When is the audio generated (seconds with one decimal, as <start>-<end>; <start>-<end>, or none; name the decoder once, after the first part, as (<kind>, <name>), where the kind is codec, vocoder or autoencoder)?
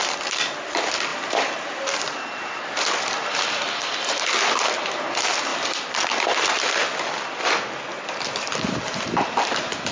1.1-4.3 (vocoder, BigVGAN v2); 5.5-9.3